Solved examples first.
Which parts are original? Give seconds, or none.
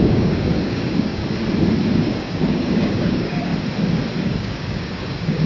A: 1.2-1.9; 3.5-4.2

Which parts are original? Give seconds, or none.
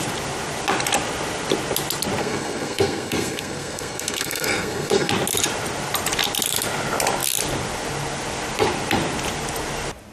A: 0.0-2.2; 5.1-10.1